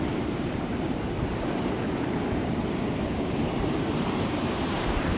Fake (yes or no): yes